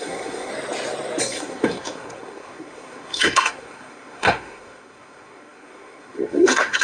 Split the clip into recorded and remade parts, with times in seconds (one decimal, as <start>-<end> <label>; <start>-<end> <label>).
0.0-0.5 remade; 0.5-1.2 recorded; 1.2-6.8 remade

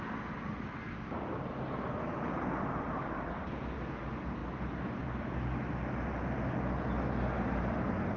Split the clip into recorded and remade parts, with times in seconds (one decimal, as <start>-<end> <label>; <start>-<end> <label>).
0.0-8.2 recorded